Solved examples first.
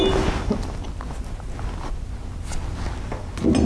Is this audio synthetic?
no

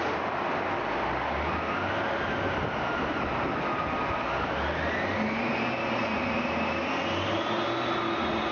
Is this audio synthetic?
no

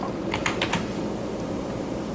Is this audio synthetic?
no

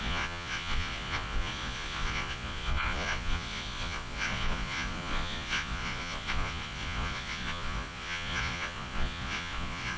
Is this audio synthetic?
yes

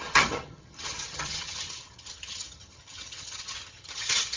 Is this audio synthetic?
yes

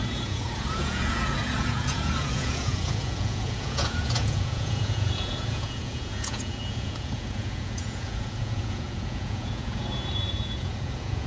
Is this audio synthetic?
yes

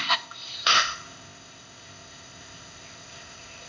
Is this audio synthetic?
yes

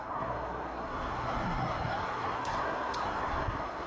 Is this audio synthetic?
yes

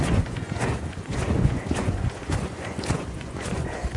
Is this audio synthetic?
yes